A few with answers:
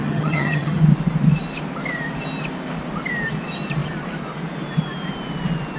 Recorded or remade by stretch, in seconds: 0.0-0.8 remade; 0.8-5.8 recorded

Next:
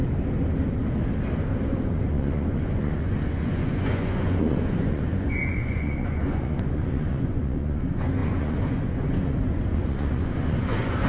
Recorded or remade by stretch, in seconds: 0.0-1.8 recorded; 1.8-11.1 remade

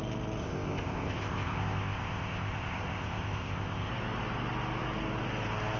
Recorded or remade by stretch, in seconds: 0.0-0.4 recorded; 0.4-3.9 remade; 3.9-5.8 recorded